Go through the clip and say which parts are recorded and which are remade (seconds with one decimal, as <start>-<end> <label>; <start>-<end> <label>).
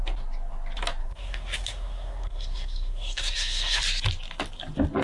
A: 0.0-1.0 recorded; 1.0-3.8 remade; 3.8-5.0 recorded